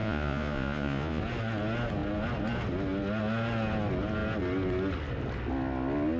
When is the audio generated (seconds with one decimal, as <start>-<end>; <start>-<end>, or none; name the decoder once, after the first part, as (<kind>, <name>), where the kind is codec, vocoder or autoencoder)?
0.0-1.2 (vocoder, Vocos)